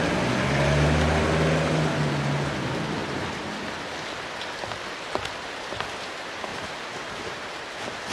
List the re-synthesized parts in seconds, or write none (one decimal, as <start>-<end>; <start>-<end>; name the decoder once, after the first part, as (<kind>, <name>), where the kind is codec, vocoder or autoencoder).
3.0-3.6 (vocoder, BigVGAN v2); 6.5-7.5

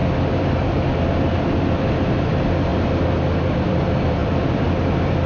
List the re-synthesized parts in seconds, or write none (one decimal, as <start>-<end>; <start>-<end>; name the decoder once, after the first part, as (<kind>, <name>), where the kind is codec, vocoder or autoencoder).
0.0-2.7 (vocoder, BigVGAN v2); 3.6-5.3

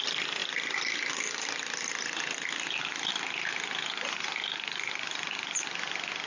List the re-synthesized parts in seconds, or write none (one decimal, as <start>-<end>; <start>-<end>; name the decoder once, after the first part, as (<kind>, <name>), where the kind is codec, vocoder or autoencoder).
0.4-3.1 (vocoder, BigVGAN v2)

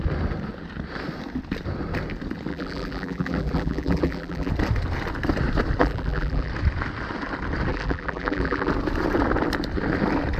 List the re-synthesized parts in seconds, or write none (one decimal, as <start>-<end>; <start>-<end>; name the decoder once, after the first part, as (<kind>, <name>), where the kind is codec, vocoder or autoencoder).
2.5-4.5 (vocoder, BigVGAN v2); 5.8-6.5; 7.7-8.7

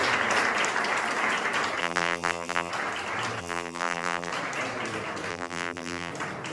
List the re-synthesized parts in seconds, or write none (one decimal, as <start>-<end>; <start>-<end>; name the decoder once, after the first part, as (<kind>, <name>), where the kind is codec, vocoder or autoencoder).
1.8-2.7 (vocoder, BigVGAN v2); 3.4-4.3; 5.3-6.1

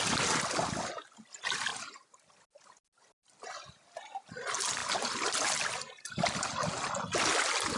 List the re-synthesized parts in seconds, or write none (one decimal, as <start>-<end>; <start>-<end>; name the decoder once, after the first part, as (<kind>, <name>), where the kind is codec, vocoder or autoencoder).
1.7-2.3 (vocoder, BigVGAN v2)